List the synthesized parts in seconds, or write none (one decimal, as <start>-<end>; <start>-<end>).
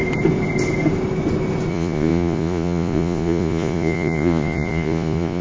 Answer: 1.7-5.4